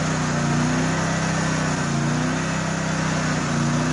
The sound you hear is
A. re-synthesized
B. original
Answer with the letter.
B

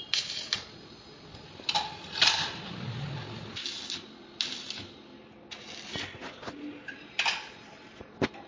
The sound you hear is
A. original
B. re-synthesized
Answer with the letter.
A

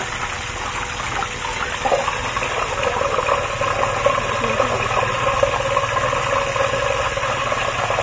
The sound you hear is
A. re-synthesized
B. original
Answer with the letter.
B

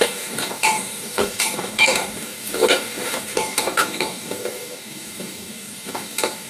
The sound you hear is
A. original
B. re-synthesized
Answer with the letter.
B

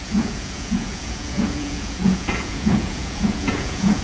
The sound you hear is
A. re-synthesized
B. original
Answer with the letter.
A